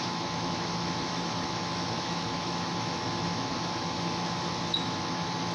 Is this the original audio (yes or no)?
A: no